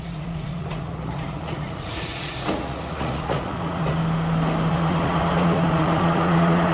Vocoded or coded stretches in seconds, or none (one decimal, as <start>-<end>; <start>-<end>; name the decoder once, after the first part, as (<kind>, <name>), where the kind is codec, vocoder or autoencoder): 0.0-4.0 (vocoder, Vocos); 4.7-6.7